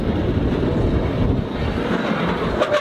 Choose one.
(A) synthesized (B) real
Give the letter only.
B